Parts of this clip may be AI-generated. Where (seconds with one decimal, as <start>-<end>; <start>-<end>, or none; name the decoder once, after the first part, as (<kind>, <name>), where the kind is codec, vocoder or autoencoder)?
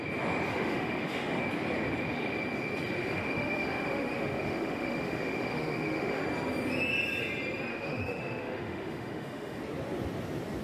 0.5-1.4 (autoencoder, DAC-VAE); 3.0-6.2; 7.7-9.6